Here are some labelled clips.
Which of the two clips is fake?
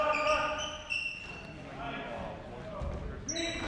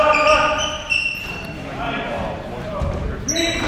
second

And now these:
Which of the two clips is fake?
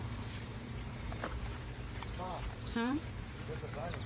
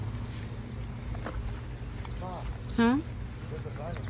first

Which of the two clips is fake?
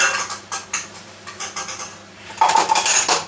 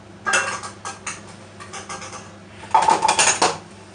first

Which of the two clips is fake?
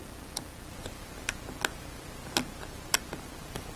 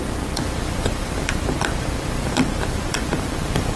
second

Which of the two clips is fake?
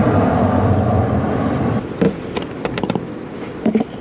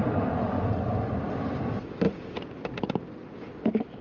second